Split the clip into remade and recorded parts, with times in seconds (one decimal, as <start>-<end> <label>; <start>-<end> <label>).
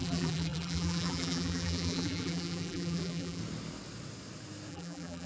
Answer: 0.0-3.4 remade; 3.4-4.7 recorded; 4.7-5.3 remade